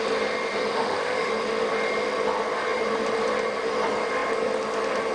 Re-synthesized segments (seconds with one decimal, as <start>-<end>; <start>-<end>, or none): 0.7-1.3